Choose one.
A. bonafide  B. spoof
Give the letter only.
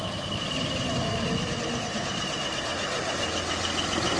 A